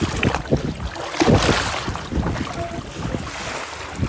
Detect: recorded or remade recorded